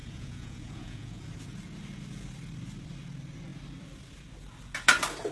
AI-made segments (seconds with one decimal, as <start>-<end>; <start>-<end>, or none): 0.0-1.3